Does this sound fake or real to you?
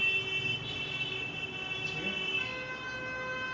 real